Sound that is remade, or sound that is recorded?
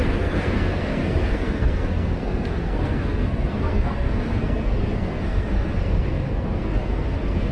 remade